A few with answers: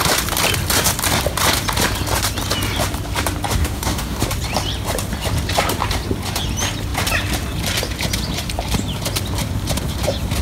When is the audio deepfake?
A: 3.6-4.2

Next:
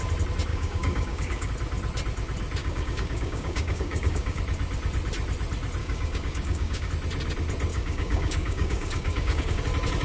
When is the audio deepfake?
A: 0.5-1.5; 2.6-4.4; 5.8-6.9; 7.7-9.6

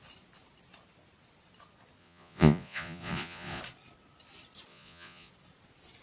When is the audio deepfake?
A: 2.0-3.6; 4.7-5.3

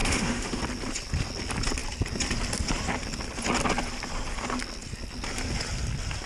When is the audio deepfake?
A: 0.0-0.6

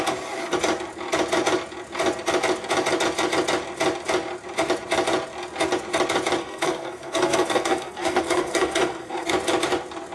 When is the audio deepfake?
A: 6.4-9.3

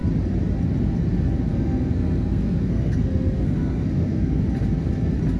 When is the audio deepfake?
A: 1.5-4.4

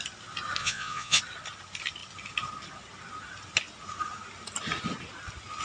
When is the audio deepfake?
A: 0.6-1.2

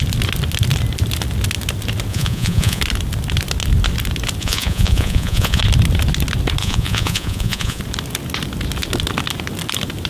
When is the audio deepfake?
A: 2.1-2.8; 4.4-5.6; 6.6-7.8